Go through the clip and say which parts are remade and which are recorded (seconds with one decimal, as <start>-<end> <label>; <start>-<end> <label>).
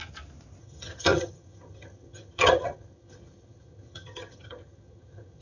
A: 0.0-0.6 recorded; 0.6-5.4 remade